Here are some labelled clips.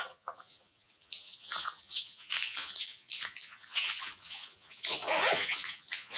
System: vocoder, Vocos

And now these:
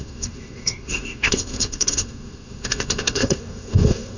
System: codec, SNAC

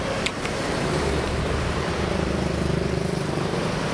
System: vocoder, BigVGAN v2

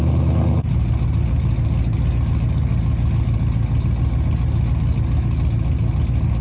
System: none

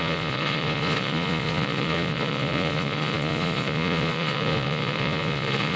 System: vocoder, Vocos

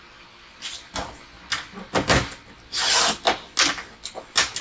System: none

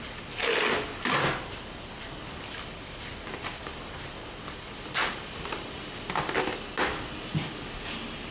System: none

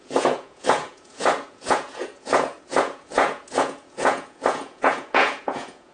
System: vocoder, Vocos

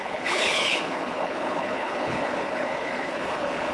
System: codec, HILCodec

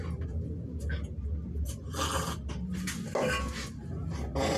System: none